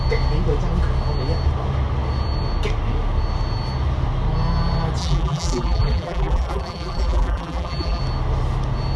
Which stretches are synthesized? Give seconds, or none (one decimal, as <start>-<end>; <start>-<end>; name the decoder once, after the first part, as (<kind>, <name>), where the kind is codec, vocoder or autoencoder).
5.0-8.0 (vocoder, BigVGAN v2)